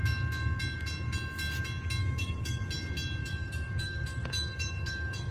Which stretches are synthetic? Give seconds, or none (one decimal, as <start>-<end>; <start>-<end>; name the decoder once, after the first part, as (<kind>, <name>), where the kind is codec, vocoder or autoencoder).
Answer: 2.0-2.6 (autoencoder, DAC-VAE); 3.2-5.3